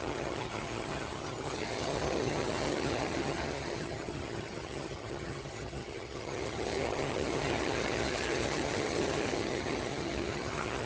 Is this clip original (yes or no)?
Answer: no